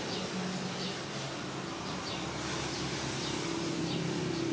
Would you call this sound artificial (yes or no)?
no